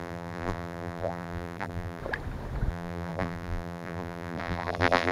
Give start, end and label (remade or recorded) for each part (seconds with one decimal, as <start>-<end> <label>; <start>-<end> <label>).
0.0-2.0 remade; 2.0-2.7 recorded; 2.7-5.1 remade